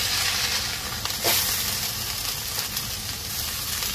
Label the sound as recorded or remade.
recorded